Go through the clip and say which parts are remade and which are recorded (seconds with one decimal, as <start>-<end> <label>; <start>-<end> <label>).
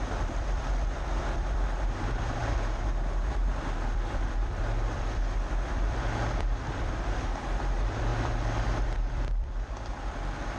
0.0-2.4 remade; 2.4-3.3 recorded; 3.3-10.6 remade